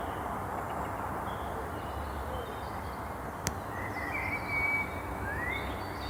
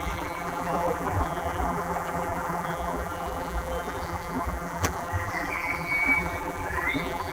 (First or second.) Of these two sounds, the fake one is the second